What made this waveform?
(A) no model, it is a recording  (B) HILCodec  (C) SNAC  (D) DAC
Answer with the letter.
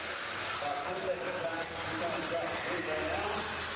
A